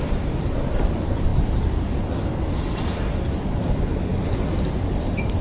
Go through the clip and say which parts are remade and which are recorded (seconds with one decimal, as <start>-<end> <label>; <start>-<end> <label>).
0.0-4.1 remade; 4.1-4.9 recorded; 4.9-5.4 remade